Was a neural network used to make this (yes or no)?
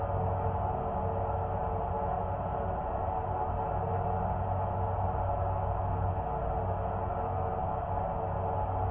no